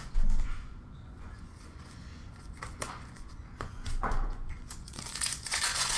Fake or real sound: fake